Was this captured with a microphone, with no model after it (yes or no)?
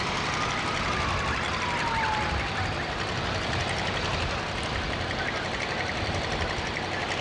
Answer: yes